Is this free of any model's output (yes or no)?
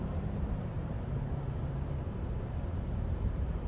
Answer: no